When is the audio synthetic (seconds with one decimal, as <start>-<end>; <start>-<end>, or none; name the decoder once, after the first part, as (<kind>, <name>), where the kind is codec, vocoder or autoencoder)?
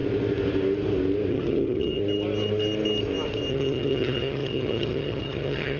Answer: 1.3-2.0 (vocoder, HiFi-GAN); 3.5-5.8